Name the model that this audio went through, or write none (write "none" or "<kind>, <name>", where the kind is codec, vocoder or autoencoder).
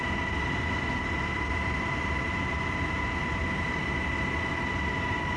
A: none